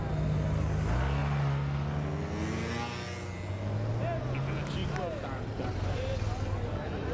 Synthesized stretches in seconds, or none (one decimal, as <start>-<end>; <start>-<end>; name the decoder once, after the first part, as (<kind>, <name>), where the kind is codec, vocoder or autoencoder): none